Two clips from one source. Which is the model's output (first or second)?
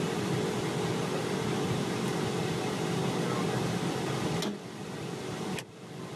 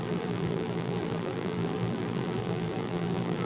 second